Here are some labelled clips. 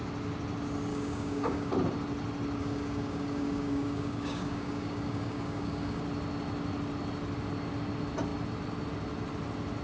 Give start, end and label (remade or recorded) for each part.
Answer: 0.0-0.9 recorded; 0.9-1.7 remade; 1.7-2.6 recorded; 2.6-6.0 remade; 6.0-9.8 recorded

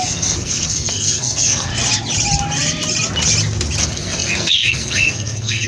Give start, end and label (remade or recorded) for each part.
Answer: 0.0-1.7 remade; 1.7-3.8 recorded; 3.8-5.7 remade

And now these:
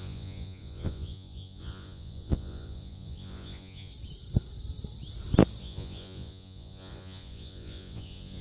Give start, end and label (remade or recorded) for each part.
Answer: 0.0-3.9 remade; 3.9-5.6 recorded; 5.6-8.4 remade